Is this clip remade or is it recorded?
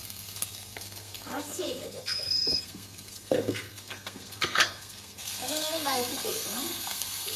remade